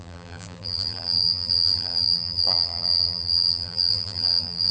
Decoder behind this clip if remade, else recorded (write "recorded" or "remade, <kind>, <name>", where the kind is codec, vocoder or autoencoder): remade, vocoder, BigVGAN v2